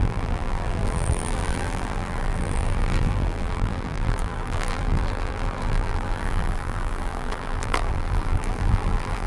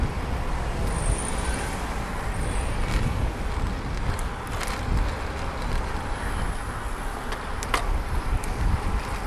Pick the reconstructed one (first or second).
first